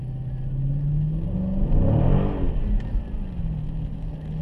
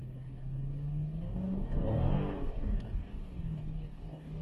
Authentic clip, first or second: first